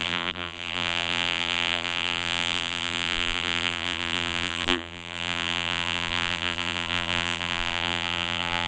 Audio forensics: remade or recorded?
remade